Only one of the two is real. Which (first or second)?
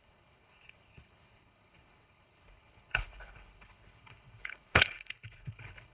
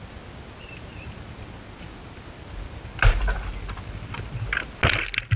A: second